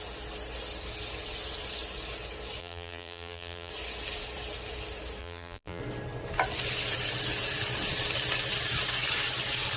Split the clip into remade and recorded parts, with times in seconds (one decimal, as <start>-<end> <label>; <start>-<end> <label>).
0.0-2.6 recorded; 2.6-3.7 remade; 3.7-5.2 recorded; 5.2-5.8 remade; 5.8-9.8 recorded